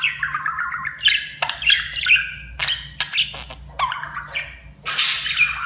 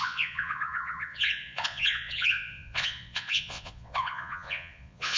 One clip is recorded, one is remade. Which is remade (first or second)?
second